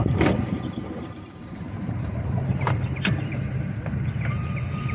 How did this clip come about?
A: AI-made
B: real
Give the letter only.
A